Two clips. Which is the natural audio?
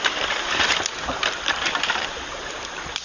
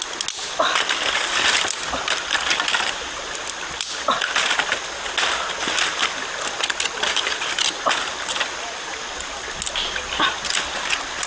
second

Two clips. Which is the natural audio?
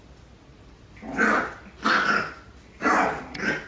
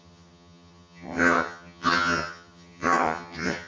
first